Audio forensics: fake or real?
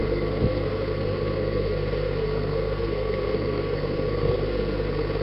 fake